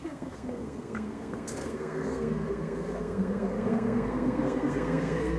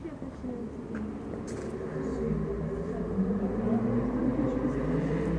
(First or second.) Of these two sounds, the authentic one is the second